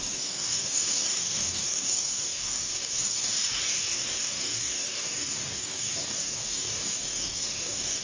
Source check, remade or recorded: remade